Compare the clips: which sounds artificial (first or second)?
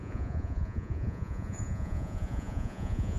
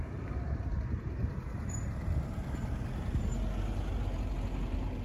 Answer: first